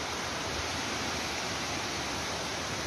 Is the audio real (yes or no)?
yes